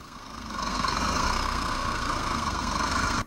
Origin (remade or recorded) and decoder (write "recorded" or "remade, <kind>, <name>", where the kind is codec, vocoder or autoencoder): remade, codec, SNAC